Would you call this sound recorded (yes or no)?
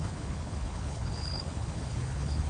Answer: no